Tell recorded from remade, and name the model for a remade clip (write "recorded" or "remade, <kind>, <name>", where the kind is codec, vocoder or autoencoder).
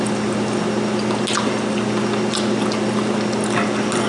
recorded